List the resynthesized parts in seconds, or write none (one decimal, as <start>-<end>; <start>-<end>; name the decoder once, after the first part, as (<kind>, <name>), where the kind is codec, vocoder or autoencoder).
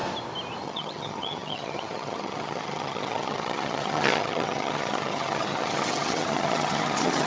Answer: 0.6-7.3 (vocoder, HiFi-GAN)